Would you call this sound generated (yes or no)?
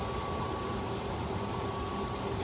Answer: no